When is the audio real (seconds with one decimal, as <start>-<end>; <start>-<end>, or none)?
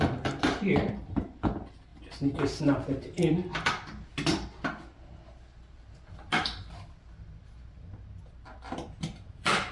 1.9-2.6; 4.1-6.4